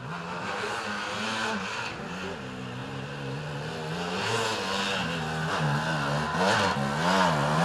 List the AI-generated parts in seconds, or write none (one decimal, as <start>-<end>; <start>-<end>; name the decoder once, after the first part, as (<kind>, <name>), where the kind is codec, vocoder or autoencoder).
2.8-3.4 (vocoder, BigVGAN v2)